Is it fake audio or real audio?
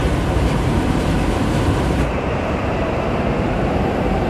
fake